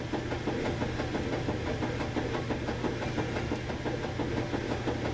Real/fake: real